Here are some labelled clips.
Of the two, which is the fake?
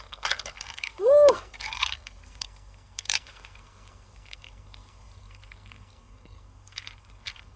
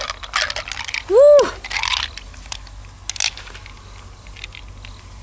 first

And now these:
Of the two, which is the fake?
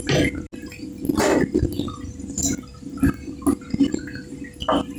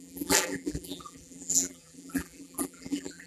second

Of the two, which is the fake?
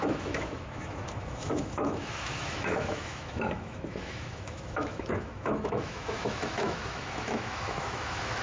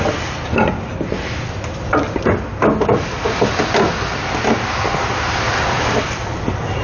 first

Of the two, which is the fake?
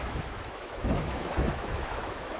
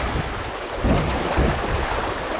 first